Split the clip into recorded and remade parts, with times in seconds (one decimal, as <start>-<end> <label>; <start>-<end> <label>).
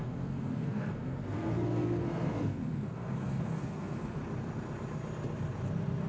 0.0-4.2 remade; 4.2-6.1 recorded